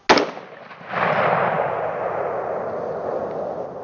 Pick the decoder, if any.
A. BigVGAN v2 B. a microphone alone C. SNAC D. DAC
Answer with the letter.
B